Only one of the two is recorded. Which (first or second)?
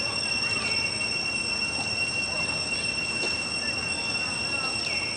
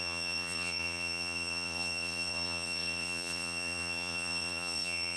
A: first